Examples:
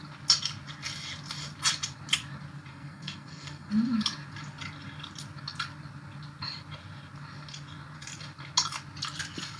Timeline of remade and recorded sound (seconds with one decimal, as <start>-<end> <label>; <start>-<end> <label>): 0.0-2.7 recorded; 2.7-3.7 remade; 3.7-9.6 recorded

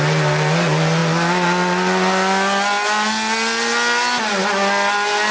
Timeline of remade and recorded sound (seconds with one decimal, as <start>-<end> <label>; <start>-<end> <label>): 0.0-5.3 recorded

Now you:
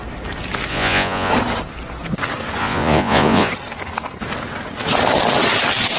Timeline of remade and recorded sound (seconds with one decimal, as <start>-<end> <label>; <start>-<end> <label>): 0.0-0.7 recorded; 0.7-1.3 remade; 1.3-2.6 recorded; 2.6-3.5 remade; 3.5-6.0 recorded

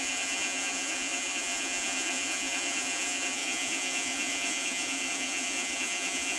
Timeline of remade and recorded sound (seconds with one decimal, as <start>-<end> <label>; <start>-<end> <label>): 0.0-6.4 remade